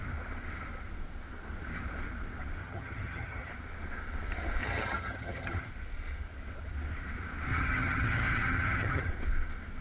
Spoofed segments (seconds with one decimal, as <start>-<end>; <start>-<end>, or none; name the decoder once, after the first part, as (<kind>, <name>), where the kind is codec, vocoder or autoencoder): 2.6-3.5 (vocoder, HiFi-GAN); 4.6-5.7; 7.5-9.1